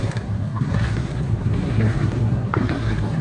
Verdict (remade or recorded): remade